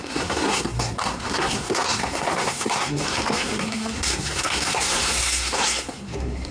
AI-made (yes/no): yes